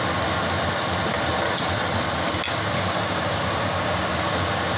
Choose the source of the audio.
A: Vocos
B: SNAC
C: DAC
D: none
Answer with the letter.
D